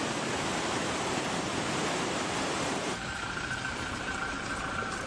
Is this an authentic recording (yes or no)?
no